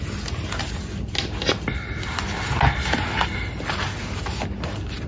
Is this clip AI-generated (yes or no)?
no